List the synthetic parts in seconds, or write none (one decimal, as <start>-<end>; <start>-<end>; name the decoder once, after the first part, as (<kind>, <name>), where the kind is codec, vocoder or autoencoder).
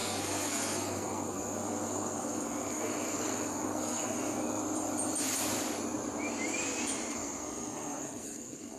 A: 0.0-4.6 (codec, SNAC); 7.1-8.8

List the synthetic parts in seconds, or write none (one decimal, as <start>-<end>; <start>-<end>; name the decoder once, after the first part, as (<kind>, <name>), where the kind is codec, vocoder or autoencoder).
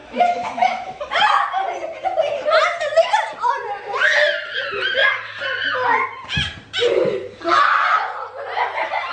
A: 0.0-1.0 (autoencoder, DAC-VAE)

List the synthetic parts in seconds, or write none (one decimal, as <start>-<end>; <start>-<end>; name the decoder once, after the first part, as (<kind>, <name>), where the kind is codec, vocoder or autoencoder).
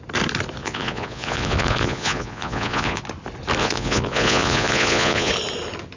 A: 0.6-3.0 (vocoder, Vocos); 3.6-5.3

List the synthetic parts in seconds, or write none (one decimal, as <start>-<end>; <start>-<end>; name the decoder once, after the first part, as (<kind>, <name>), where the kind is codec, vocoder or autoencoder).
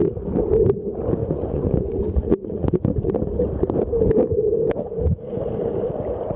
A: 1.2-3.1 (vocoder, Vocos)